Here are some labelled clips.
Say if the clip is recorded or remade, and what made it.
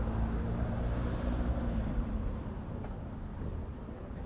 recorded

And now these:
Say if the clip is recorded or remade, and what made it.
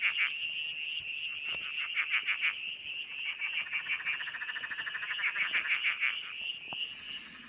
recorded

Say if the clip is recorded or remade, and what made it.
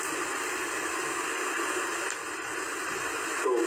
recorded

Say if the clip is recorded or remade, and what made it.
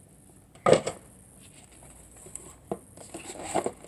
recorded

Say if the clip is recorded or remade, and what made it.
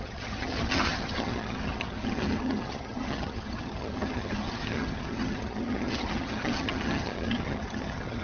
remade, vocoder, HiFi-GAN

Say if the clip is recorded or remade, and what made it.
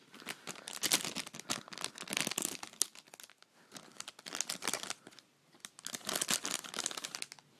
recorded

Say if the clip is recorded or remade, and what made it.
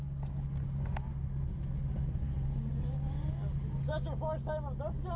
recorded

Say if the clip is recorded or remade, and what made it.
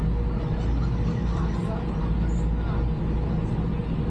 recorded